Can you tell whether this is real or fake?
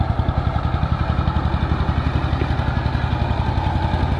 real